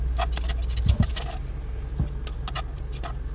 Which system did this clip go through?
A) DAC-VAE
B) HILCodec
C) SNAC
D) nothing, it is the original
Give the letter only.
D